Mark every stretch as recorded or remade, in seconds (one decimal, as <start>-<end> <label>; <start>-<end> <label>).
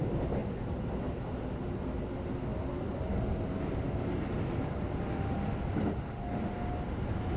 0.0-7.4 recorded